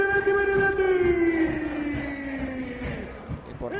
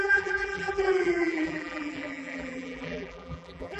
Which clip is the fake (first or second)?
second